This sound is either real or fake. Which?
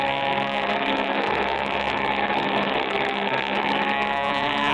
fake